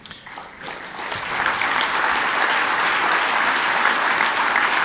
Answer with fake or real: real